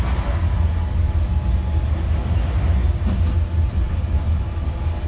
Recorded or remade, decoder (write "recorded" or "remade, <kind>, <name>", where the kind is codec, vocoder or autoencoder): recorded